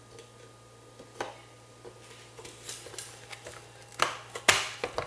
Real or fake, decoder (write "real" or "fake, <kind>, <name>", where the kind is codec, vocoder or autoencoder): real